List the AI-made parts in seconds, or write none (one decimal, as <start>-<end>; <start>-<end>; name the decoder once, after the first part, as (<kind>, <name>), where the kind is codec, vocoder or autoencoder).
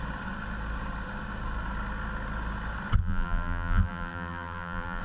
3.0-5.0 (vocoder, BigVGAN v2)